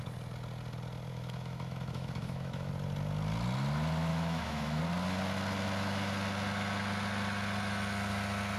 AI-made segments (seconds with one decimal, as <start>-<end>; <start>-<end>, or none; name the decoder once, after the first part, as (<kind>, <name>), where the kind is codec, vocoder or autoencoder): 1.1-2.7 (autoencoder, DAC-VAE); 4.1-4.8